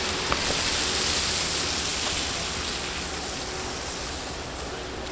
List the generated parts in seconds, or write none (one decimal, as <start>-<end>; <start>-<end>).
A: none